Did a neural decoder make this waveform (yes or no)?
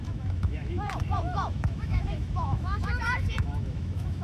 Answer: yes